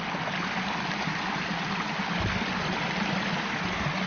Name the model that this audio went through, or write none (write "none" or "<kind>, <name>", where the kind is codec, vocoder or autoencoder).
none